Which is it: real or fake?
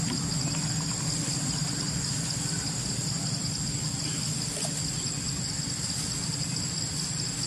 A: real